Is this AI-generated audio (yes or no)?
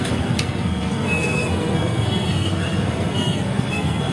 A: yes